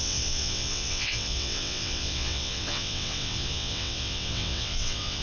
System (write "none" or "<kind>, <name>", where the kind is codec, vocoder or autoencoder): vocoder, WaveNeXt